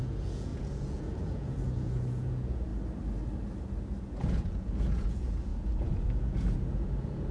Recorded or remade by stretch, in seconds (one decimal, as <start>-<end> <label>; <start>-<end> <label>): 0.0-2.7 remade; 2.7-4.0 recorded; 4.0-7.3 remade